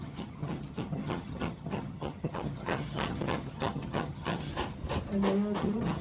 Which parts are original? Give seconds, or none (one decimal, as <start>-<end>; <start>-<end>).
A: 4.5-5.6